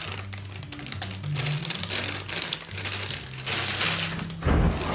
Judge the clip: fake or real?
real